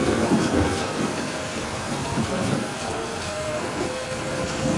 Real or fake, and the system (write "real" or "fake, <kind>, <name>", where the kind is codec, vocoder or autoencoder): fake, codec, SNAC